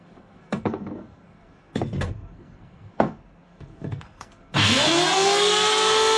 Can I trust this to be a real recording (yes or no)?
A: no